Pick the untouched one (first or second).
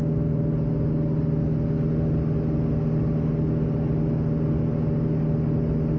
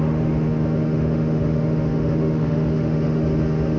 first